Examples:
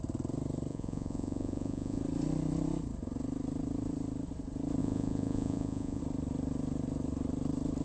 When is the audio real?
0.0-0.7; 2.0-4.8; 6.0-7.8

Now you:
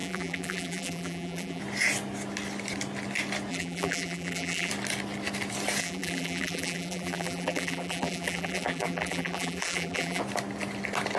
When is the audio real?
1.6-3.5; 4.7-5.8; 10.2-11.2